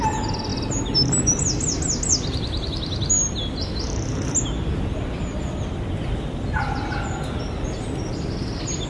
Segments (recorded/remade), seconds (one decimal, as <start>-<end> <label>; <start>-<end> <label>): 0.0-8.9 recorded